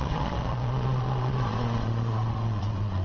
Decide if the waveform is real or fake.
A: fake